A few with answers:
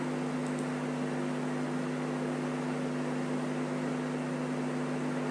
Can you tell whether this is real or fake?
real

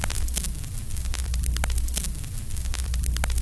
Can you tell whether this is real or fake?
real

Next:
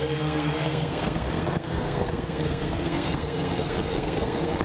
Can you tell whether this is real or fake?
fake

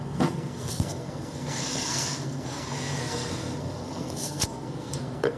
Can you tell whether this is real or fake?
fake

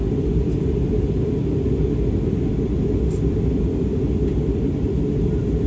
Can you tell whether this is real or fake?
real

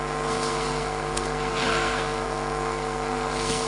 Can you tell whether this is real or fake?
fake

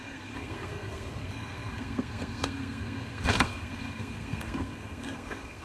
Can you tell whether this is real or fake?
fake